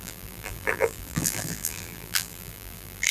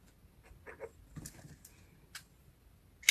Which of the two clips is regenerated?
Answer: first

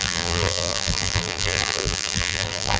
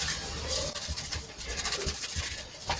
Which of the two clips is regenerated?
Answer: first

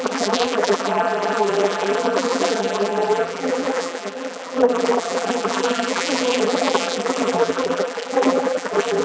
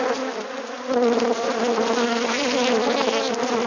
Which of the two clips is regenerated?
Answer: first